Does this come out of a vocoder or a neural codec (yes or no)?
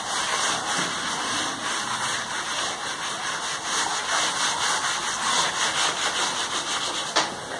no